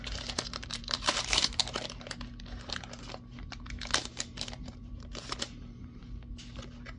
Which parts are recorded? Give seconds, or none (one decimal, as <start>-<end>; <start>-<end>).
0.0-0.6; 1.6-4.1; 6.3-7.0